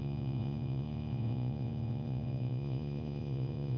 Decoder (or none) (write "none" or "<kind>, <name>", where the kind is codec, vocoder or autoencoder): vocoder, Vocos